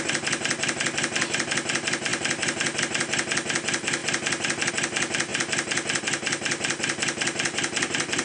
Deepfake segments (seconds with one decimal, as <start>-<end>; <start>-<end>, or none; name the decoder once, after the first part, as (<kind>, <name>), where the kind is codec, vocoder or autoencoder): none